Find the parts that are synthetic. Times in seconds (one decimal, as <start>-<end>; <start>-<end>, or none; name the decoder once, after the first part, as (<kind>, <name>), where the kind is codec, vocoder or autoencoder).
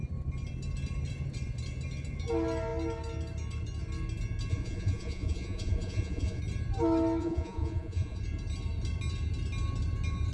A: 4.5-6.4 (vocoder, Vocos); 7.2-8.2